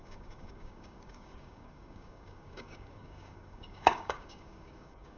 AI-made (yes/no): yes